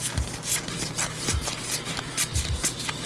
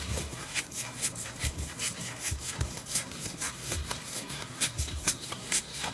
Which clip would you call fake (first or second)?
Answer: second